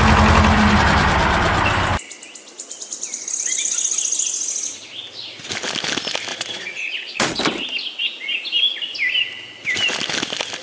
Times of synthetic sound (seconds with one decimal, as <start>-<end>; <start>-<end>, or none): 6.3-7.4